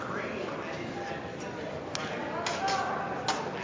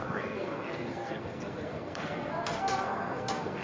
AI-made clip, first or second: second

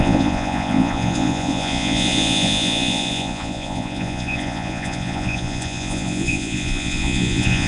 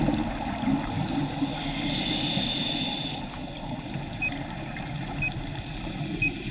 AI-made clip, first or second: first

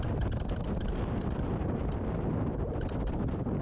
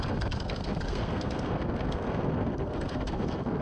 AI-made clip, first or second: second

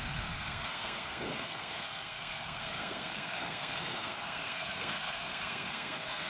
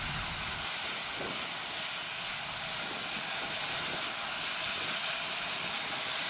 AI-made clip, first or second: first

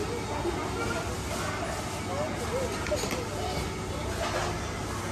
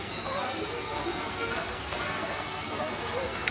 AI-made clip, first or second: second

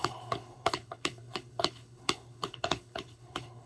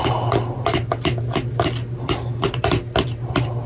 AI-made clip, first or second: first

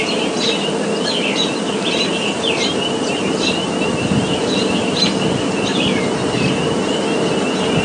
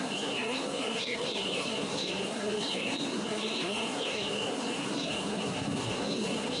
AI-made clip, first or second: second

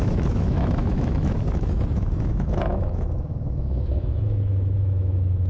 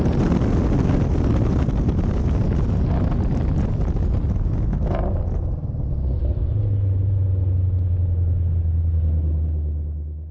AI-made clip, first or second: first